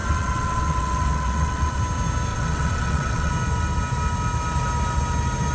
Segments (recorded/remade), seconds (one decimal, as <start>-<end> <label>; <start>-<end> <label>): 0.0-1.8 remade; 1.8-2.3 recorded; 2.3-3.3 remade; 3.3-5.5 recorded